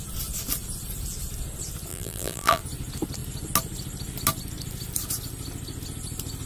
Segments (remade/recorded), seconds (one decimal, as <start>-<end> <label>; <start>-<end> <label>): 0.0-1.9 recorded; 1.9-2.6 remade; 2.6-6.5 recorded